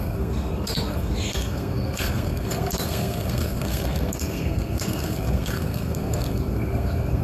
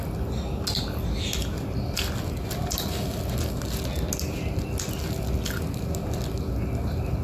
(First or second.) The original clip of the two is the second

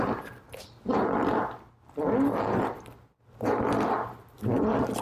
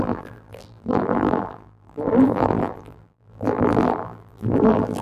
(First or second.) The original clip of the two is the first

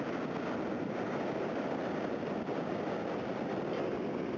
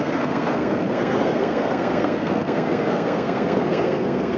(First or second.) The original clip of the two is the first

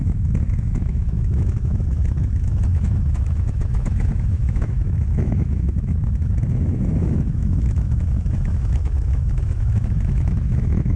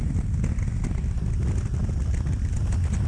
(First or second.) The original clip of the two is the second